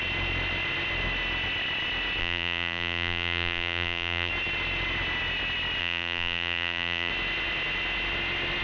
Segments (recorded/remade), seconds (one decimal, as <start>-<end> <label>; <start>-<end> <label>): 0.0-2.2 recorded; 2.2-4.3 remade; 4.3-5.8 recorded; 5.8-7.1 remade; 7.1-8.6 recorded